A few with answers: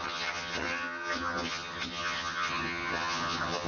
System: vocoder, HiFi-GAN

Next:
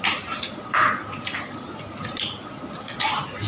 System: none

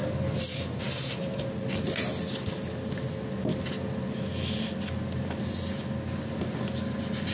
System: none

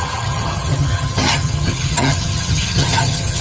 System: vocoder, HiFi-GAN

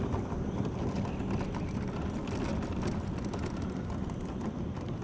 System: none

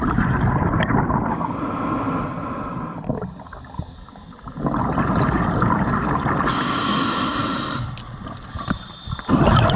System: none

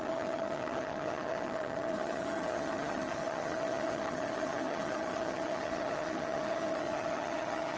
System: vocoder, HiFi-GAN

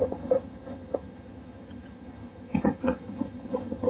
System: vocoder, HiFi-GAN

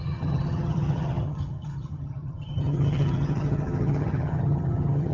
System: vocoder, HiFi-GAN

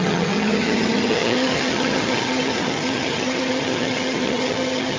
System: vocoder, HiFi-GAN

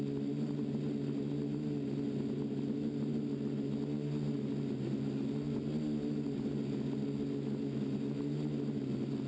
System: none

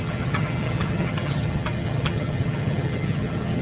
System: vocoder, HiFi-GAN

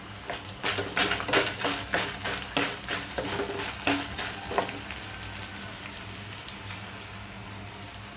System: none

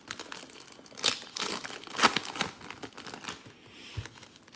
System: none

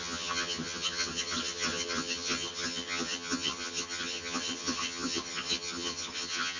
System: vocoder, HiFi-GAN